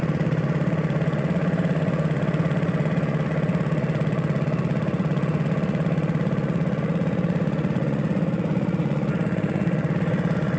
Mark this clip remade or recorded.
remade